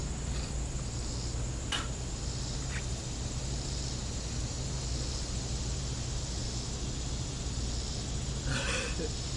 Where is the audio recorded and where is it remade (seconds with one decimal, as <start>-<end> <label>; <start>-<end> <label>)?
0.0-9.4 recorded